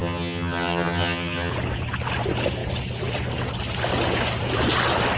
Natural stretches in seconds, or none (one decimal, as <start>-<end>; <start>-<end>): 1.5-5.2

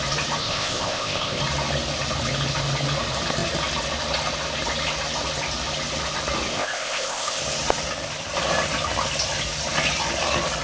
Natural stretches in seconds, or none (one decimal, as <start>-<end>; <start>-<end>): 0.0-0.4; 1.4-6.5; 7.4-10.6